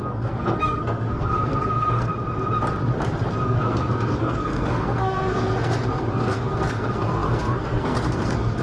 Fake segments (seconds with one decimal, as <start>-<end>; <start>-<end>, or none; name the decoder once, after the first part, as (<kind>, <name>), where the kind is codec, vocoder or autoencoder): 0.0-2.1 (codec, SNAC); 3.4-8.6